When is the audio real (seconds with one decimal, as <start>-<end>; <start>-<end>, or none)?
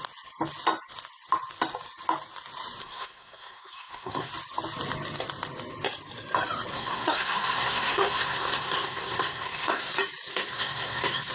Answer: 0.0-2.8; 4.3-6.7; 9.9-10.3